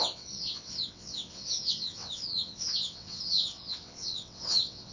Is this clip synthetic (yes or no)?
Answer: yes